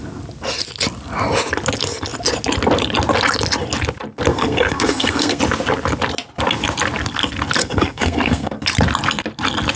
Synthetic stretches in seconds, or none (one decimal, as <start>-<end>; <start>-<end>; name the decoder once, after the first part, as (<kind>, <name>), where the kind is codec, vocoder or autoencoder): 4.3-5.4 (codec, SNAC); 7.6-8.6